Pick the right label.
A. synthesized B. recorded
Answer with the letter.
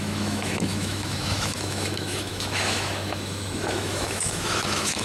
A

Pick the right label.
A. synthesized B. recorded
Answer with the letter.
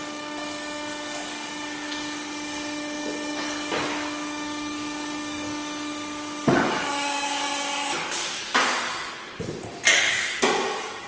A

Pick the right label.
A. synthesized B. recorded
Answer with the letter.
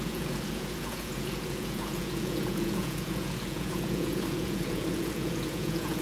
A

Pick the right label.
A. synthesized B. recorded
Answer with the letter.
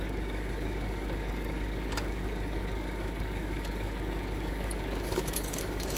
A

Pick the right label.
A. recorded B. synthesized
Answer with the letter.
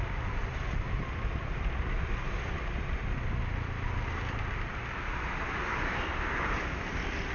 A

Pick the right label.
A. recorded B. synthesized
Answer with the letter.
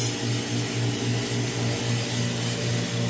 A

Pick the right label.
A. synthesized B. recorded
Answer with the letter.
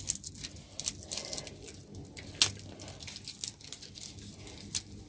B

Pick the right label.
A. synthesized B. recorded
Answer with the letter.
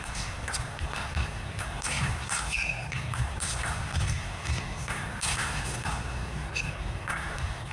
A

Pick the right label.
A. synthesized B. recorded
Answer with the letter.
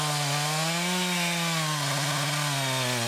B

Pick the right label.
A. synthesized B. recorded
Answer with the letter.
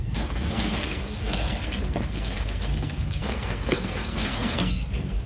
A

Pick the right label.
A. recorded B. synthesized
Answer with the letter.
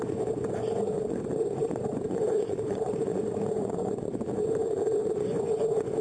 B